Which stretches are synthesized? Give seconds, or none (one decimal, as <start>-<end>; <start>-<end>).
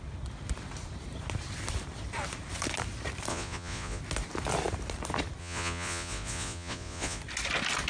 3.3-4.0; 5.4-7.2